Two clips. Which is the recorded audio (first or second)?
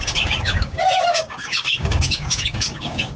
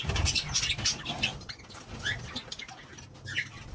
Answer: second